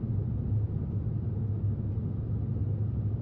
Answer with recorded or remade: recorded